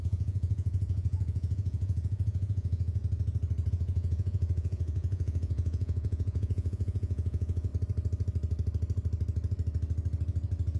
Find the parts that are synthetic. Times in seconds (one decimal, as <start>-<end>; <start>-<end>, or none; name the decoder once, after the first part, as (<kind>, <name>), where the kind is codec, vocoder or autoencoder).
0.0-3.0 (vocoder, Vocos); 3.7-7.7